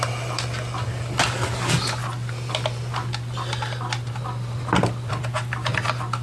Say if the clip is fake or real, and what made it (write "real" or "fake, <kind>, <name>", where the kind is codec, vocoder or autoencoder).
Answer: real